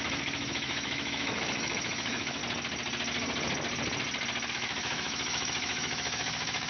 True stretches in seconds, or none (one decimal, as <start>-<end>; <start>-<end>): 2.4-4.5

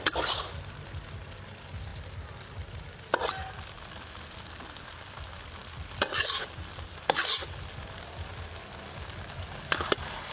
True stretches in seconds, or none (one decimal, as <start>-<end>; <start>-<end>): 0.0-10.3

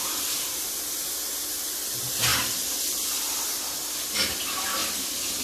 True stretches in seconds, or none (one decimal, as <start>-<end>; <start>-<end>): 0.0-5.4

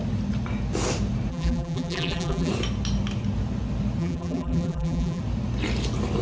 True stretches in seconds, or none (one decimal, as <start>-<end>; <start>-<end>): 0.0-1.3; 2.5-4.0; 5.2-6.2

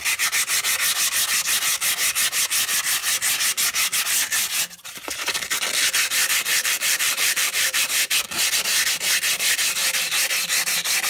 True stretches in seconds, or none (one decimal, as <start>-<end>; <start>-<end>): 0.0-6.2; 8.2-11.1

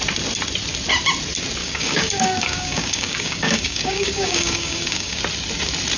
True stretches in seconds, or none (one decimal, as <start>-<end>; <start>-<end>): 0.0-1.6; 5.2-6.0